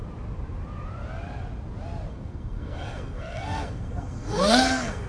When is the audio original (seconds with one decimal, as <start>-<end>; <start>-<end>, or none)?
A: 0.0-2.1